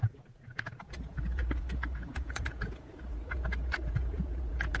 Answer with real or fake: fake